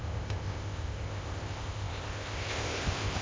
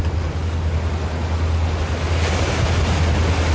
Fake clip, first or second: first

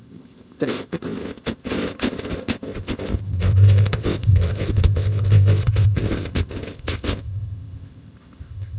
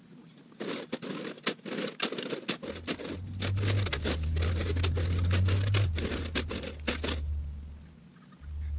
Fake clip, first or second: first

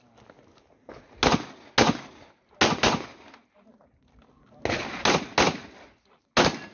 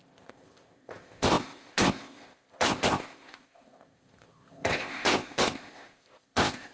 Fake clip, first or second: second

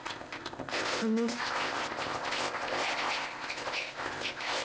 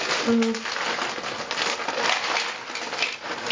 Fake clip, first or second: first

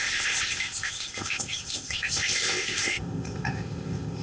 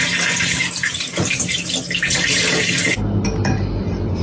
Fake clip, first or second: first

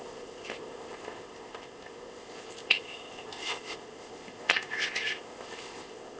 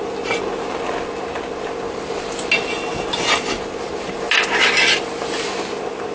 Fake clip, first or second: first